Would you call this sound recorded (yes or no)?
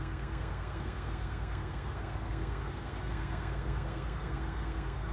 no